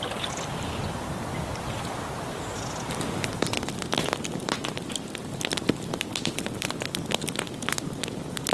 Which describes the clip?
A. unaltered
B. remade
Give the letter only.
A